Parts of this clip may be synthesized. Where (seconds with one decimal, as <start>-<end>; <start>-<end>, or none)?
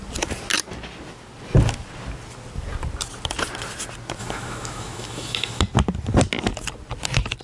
4.2-5.6